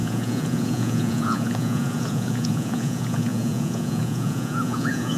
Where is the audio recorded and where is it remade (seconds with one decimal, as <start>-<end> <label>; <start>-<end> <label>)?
0.0-5.2 remade